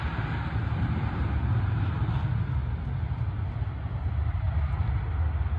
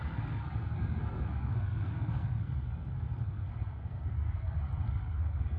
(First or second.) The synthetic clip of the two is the second